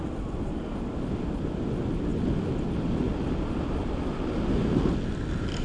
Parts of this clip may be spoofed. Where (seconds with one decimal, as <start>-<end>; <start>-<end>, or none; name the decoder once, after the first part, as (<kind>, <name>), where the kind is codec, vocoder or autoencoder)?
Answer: none